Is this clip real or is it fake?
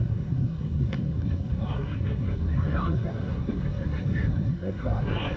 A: fake